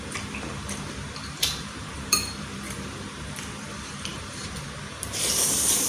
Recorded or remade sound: remade